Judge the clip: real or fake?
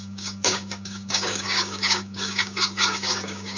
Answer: fake